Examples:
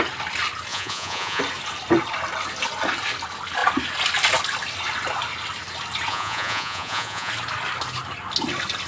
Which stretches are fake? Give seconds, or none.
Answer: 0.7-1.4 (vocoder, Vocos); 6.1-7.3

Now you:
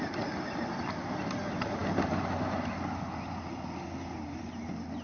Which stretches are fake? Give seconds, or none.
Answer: none

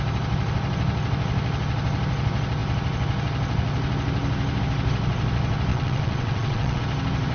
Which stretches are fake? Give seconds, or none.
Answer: 5.7-6.8 (vocoder, WaveNeXt)